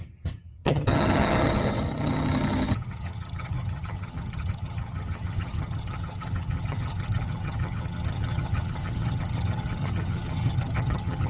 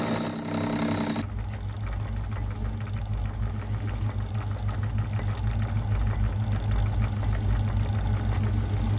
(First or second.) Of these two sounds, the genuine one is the second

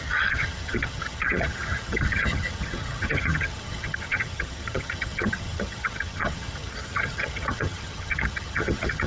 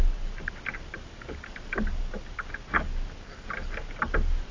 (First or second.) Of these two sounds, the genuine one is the second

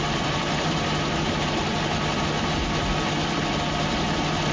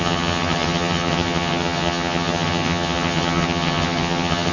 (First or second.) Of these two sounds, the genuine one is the first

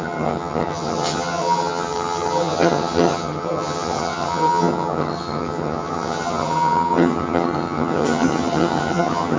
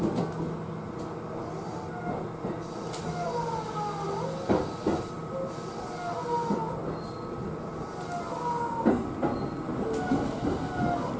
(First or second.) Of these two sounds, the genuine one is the second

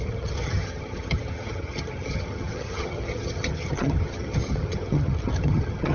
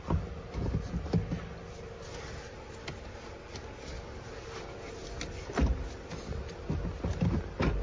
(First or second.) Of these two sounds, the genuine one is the second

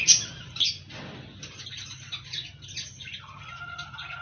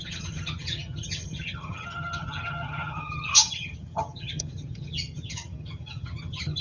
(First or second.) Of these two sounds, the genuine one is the first